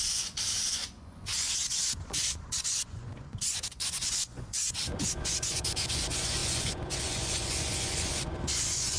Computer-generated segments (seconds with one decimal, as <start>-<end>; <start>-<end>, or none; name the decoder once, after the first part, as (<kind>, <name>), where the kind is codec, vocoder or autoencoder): 0.0-9.0 (vocoder, Vocos)